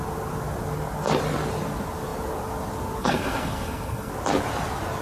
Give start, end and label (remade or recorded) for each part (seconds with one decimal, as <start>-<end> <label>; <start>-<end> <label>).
0.0-3.0 recorded; 3.0-4.1 remade; 4.1-5.0 recorded